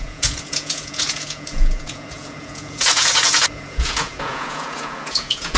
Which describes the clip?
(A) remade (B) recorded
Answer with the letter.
A